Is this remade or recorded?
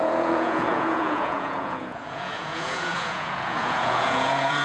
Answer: remade